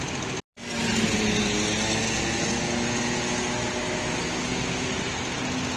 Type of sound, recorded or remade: recorded